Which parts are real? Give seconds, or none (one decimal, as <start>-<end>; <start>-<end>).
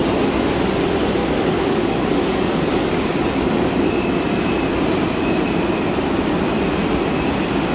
0.0-1.2; 3.2-7.7